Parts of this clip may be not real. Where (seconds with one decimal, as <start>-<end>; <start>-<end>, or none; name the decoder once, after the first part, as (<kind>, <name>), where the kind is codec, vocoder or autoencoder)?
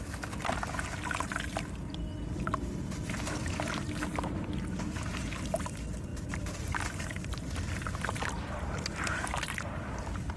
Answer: none